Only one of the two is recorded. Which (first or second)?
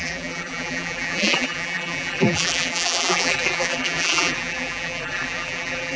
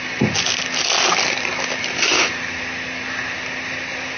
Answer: second